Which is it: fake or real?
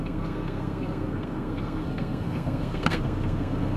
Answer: fake